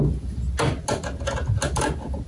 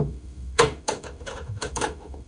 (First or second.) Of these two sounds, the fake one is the second